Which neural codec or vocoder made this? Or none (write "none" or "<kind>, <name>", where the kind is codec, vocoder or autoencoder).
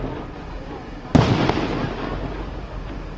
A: none